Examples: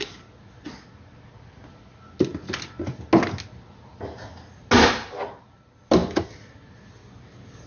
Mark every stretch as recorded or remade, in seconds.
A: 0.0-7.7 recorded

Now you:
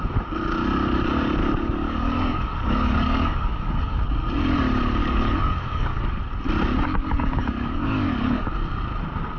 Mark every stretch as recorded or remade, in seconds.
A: 0.0-1.4 recorded; 1.4-4.0 remade; 4.0-5.0 recorded; 5.0-6.2 remade; 6.2-6.9 recorded; 6.9-8.5 remade; 8.5-9.4 recorded